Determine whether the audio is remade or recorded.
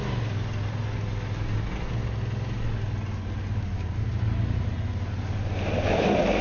recorded